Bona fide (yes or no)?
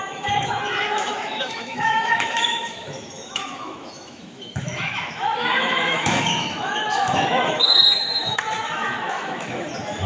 no